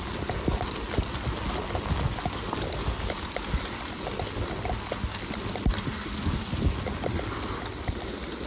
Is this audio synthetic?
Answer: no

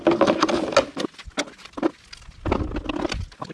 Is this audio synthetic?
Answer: no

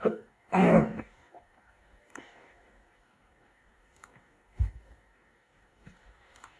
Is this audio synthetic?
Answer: yes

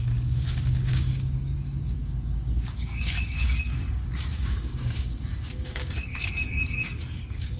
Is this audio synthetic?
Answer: yes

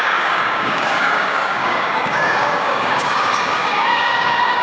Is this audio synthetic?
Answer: yes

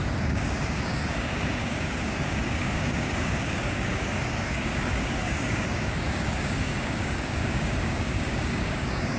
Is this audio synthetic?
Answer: yes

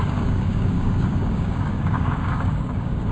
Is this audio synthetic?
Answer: yes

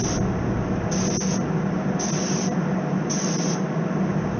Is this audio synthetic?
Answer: no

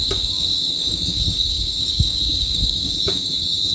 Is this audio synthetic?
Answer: yes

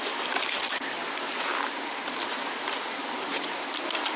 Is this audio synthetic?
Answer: no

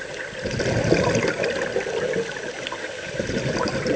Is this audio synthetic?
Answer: no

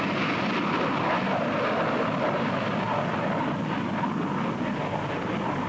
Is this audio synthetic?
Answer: no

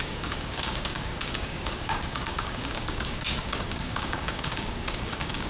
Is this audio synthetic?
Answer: yes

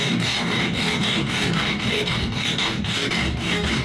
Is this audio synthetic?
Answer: yes